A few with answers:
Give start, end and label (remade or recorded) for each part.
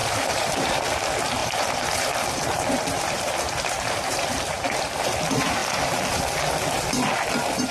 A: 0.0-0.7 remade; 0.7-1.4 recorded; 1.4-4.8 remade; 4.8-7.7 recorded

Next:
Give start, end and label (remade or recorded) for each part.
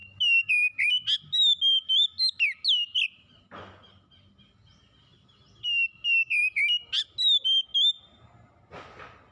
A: 0.0-9.3 recorded